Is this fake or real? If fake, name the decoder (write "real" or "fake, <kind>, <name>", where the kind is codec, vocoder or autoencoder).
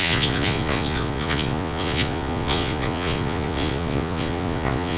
fake, vocoder, Vocos